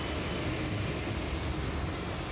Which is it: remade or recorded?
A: recorded